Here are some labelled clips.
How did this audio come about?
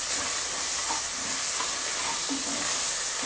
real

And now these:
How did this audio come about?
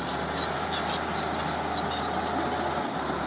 real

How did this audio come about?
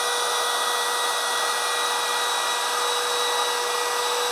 real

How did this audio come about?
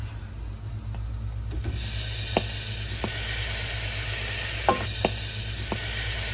real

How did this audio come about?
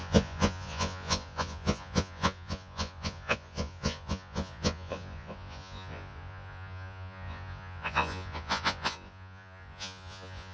fake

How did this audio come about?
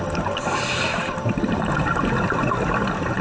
fake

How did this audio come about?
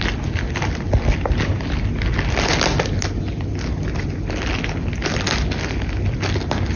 real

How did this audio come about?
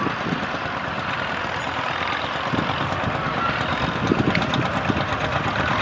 real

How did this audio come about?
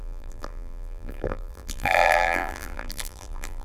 fake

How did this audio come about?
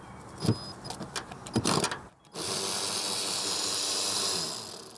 real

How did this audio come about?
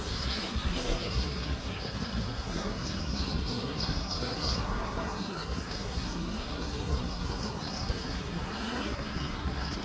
fake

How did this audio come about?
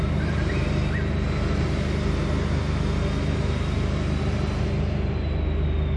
real